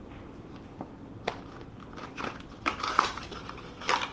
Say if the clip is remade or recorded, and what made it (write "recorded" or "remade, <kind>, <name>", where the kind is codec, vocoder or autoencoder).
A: remade, vocoder, BigVGAN v2